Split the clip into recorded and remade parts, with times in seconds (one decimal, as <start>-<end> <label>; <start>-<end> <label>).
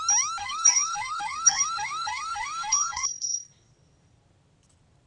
0.0-0.4 recorded; 0.4-3.5 remade; 3.5-5.1 recorded